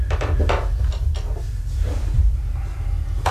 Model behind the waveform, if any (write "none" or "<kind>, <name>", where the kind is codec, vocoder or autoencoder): none